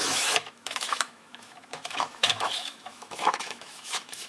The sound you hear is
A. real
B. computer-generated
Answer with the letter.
B